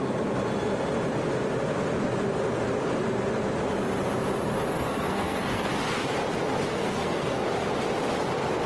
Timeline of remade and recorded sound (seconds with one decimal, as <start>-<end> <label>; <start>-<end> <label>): 0.0-4.7 recorded; 4.7-5.7 remade; 5.7-6.7 recorded; 6.7-7.4 remade; 7.4-8.7 recorded